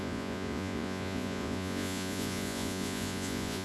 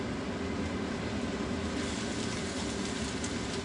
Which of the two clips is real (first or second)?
second